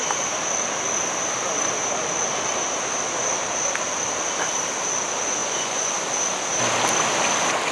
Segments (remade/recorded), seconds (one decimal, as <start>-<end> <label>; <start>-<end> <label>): 0.0-5.4 recorded; 5.4-5.9 remade; 5.9-7.7 recorded